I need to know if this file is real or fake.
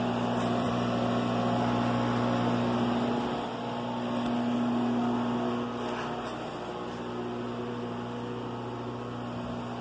fake